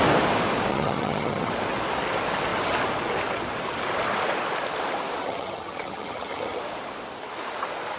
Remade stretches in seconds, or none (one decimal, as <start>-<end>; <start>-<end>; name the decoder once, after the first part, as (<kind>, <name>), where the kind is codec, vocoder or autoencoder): 0.7-1.5 (vocoder, HiFi-GAN); 5.2-6.6